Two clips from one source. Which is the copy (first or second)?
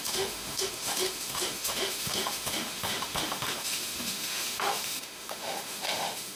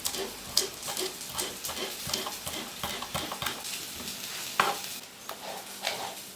first